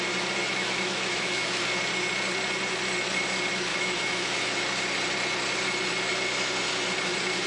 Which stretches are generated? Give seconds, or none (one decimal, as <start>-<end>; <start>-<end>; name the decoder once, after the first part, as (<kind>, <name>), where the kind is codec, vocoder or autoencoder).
0.4-1.6 (autoencoder, DAC-VAE); 3.7-4.6